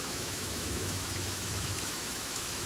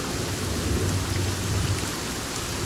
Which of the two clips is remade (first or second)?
first